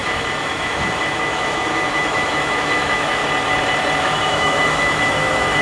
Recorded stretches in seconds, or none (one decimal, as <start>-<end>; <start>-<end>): 3.2-4.0